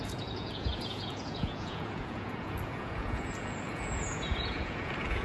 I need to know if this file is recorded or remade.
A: remade